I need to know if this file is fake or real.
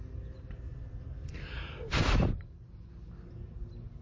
real